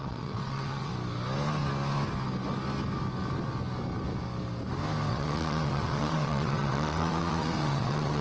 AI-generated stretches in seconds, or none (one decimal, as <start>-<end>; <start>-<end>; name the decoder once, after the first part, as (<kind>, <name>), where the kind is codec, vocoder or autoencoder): 0.0-0.9 (vocoder, WaveNeXt); 5.1-8.2